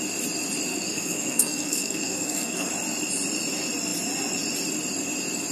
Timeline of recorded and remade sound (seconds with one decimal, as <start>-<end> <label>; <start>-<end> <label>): 0.0-0.7 recorded; 0.7-2.7 remade; 2.7-5.5 recorded